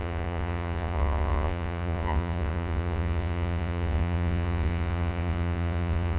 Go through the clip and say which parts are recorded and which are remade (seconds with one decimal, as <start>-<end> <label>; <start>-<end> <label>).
0.0-6.2 remade